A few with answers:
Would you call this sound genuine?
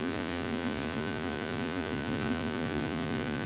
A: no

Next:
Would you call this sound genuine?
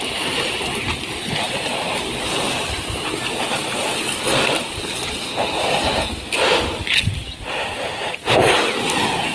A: no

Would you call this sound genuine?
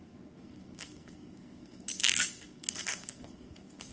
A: no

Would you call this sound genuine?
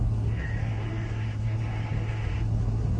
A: no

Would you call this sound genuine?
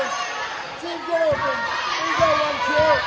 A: yes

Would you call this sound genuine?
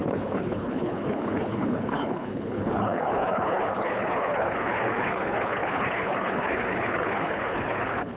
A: no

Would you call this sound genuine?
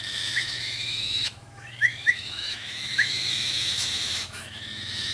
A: no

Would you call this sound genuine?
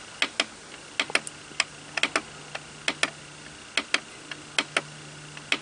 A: yes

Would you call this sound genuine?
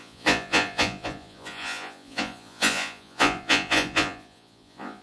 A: no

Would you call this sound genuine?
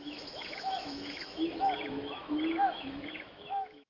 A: no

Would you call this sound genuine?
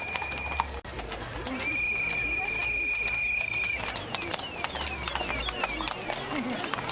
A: yes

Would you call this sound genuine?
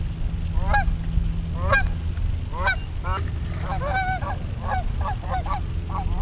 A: yes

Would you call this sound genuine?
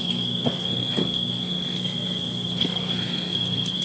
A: no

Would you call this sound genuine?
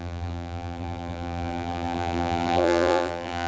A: no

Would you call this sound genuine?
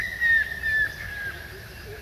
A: yes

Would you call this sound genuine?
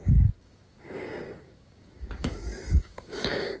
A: no